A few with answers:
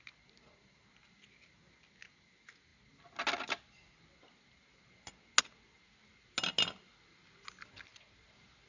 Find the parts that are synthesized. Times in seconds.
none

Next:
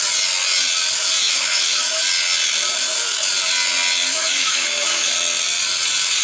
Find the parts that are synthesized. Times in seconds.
1.2-2.0 (autoencoder, DAC-VAE); 4.1-5.1

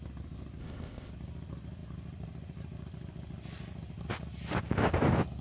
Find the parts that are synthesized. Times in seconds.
0.6-1.1 (codec, ZipCodec)

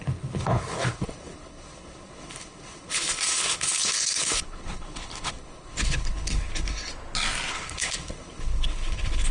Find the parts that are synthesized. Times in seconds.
0.0-6.9 (codec, HILCodec); 7.5-9.3

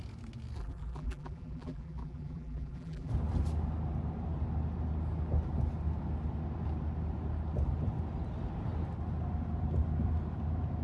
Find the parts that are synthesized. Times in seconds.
0.6-3.1 (vocoder, BigVGAN v2)

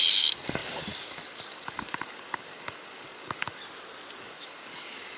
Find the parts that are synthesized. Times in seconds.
0.0-3.6 (codec, DAC); 4.2-5.2